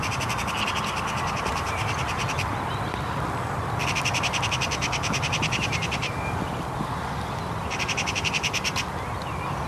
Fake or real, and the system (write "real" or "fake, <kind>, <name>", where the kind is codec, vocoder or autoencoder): real